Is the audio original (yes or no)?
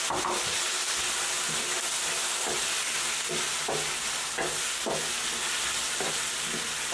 yes